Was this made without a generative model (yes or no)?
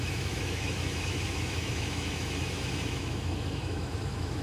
no